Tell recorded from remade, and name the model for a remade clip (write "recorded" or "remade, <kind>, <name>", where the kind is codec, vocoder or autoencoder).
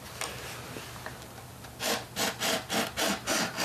recorded